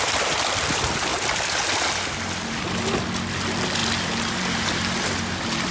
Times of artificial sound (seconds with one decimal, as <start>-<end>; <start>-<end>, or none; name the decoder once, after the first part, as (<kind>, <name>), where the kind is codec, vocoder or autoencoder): none

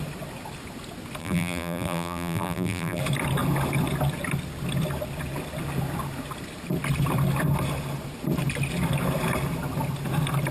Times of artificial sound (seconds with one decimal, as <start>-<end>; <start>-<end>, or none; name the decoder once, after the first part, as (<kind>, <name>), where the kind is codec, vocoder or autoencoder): 1.2-3.0 (vocoder, BigVGAN v2)

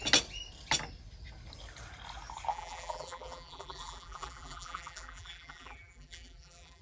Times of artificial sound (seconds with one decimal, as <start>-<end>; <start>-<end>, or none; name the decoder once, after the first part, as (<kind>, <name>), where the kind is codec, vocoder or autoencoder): 2.5-6.8 (vocoder, BigVGAN v2)

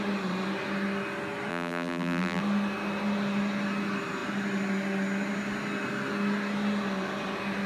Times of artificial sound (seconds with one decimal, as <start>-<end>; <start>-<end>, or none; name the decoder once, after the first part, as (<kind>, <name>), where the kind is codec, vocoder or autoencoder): 1.5-2.4 (vocoder, BigVGAN v2)

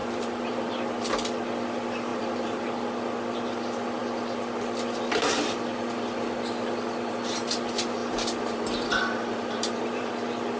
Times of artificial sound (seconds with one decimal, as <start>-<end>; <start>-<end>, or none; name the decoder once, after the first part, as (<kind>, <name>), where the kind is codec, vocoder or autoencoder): 0.0-0.7 (vocoder, BigVGAN v2); 2.1-2.6; 8.0-10.1

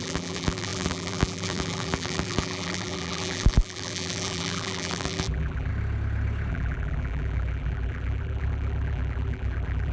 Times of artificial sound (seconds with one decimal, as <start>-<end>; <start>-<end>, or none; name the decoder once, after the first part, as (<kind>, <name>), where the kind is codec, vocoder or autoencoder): 0.0-5.7 (vocoder, BigVGAN v2); 6.5-9.9

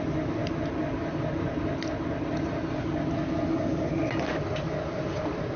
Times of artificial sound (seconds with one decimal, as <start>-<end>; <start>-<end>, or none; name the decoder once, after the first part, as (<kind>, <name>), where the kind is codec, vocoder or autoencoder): none

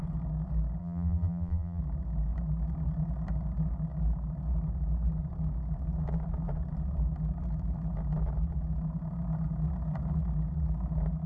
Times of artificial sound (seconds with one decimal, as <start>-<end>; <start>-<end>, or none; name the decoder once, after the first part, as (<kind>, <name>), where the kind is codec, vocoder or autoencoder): 0.8-1.8 (vocoder, BigVGAN v2)